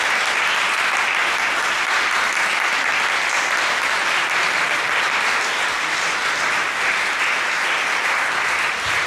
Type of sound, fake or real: real